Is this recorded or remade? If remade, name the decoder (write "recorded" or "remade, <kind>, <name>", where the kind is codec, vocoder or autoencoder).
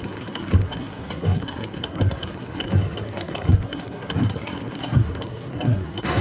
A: remade, codec, SNAC